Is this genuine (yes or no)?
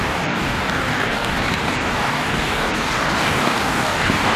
no